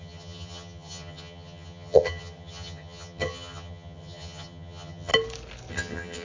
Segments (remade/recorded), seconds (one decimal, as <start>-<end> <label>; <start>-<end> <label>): 0.0-5.1 remade; 5.1-5.7 recorded; 5.7-6.2 remade